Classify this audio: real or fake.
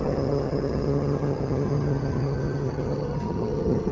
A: fake